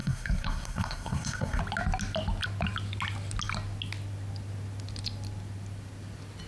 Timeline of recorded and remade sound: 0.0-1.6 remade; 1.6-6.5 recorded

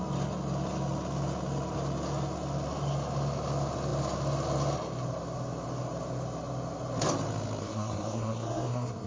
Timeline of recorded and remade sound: 0.0-7.6 recorded; 7.6-9.1 remade